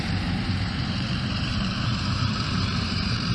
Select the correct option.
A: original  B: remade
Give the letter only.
B